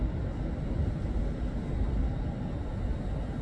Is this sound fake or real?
real